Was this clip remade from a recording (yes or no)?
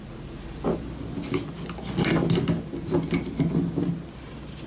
no